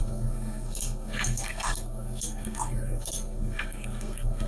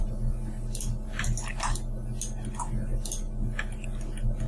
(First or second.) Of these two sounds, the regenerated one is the first